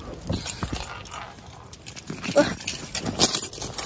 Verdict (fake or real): real